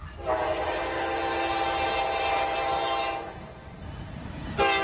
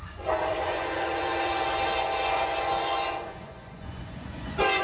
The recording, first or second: first